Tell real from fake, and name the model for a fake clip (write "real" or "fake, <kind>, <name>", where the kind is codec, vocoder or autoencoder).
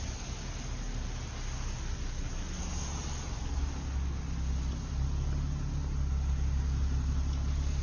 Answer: real